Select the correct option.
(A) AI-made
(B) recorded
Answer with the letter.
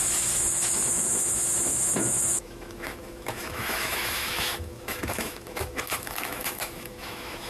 A